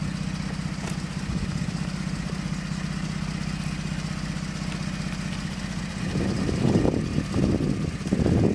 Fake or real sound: real